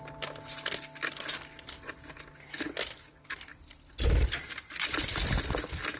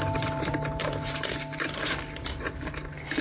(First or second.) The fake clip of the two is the second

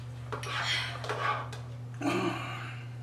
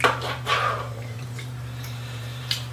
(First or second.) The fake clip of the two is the second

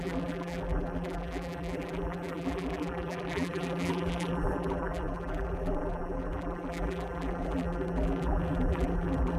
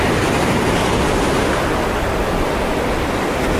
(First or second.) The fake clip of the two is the first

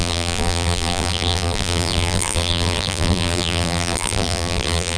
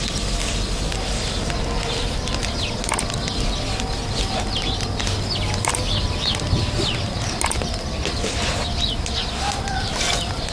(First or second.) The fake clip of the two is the first